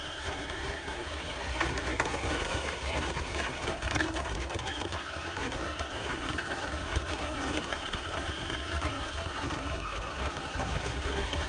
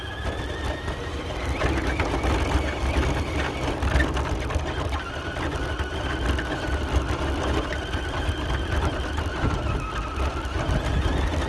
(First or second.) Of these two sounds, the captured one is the second